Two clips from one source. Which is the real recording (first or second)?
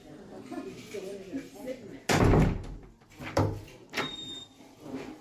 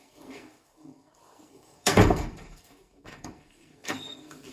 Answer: first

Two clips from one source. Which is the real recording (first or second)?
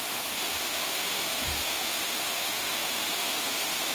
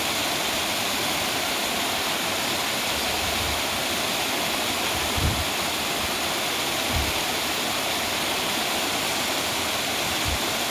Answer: second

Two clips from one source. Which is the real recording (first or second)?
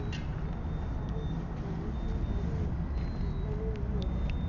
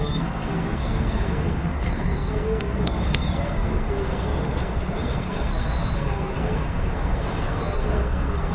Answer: first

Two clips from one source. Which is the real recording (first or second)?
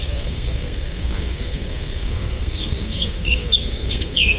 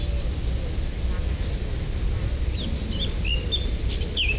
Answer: second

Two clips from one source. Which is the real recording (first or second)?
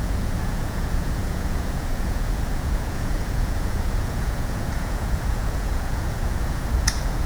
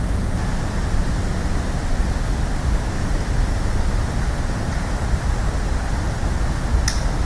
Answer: second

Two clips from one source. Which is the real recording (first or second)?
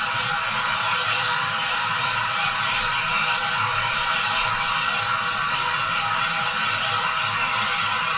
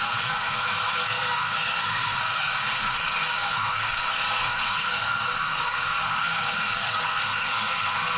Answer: first